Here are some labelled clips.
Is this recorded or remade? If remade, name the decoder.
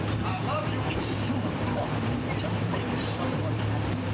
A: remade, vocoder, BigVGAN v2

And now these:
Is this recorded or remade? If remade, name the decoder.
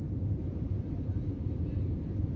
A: remade, vocoder, BigVGAN v2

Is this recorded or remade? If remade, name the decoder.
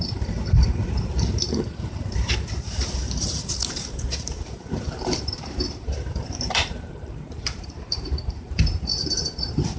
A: remade, vocoder, BigVGAN v2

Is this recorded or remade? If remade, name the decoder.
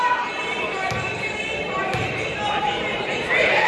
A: remade, vocoder, BigVGAN v2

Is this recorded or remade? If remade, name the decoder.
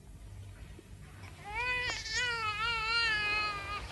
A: recorded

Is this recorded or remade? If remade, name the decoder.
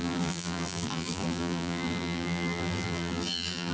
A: remade, vocoder, BigVGAN v2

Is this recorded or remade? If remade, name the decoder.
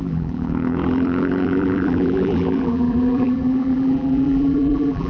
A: remade, vocoder, BigVGAN v2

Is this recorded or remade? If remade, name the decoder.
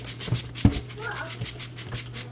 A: recorded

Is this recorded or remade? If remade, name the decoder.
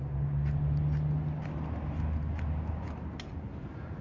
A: recorded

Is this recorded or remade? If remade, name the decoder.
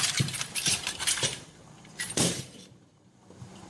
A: remade, vocoder, BigVGAN v2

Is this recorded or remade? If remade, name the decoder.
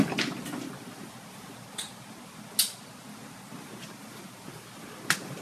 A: recorded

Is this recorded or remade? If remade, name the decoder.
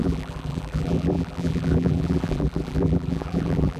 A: remade, vocoder, BigVGAN v2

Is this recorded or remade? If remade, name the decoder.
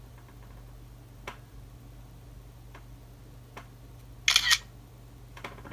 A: recorded